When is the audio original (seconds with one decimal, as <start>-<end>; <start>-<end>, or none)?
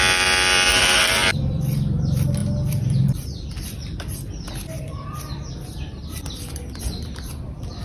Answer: none